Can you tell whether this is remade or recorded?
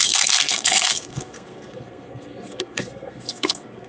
remade